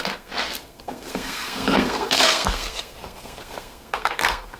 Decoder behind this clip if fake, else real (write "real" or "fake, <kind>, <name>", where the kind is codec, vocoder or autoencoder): fake, codec, SNAC